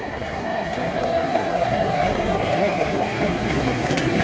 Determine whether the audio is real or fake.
fake